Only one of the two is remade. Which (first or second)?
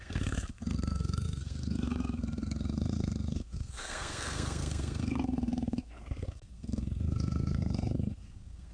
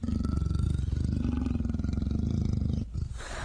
first